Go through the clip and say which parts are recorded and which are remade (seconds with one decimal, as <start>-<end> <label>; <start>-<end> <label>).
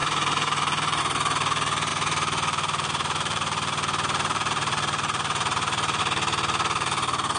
0.0-1.0 remade; 1.0-1.9 recorded; 1.9-6.0 remade; 6.0-7.4 recorded